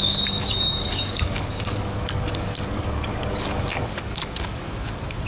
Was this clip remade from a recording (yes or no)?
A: yes